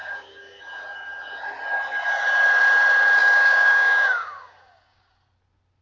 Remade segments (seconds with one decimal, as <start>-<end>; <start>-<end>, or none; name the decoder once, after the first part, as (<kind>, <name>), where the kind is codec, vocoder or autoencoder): 0.0-0.6 (codec, DAC); 3.2-5.1